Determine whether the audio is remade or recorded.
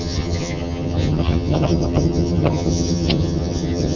remade